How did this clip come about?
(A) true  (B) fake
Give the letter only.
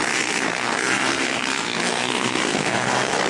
B